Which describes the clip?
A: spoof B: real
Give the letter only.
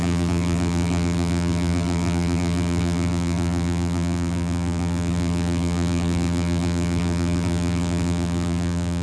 A